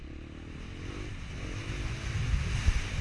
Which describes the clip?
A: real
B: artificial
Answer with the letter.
A